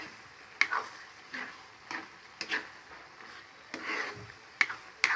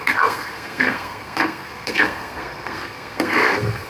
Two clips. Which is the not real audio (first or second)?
second